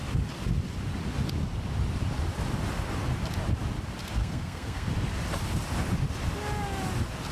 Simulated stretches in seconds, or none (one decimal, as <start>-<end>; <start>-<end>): 4.2-4.9